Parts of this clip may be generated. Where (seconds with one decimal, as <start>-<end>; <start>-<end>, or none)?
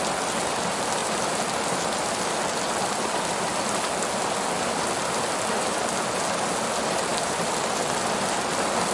none